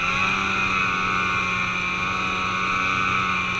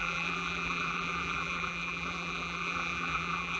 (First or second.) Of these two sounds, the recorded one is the first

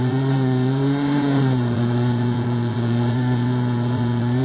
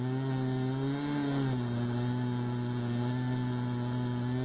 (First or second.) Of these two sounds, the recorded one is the second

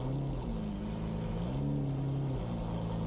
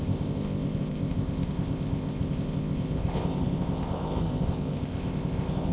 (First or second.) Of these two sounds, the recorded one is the first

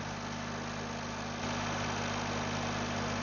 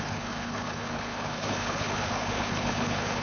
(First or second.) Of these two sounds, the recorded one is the first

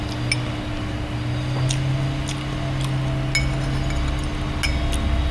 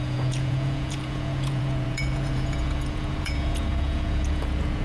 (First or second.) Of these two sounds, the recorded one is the first